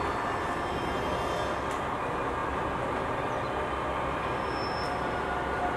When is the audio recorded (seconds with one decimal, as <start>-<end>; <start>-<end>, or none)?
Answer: 0.0-5.8